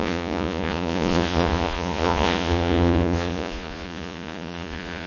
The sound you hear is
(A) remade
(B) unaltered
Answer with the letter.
A